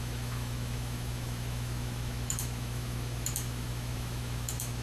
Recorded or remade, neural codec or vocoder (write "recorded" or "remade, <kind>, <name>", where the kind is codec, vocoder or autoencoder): remade, autoencoder, DAC-VAE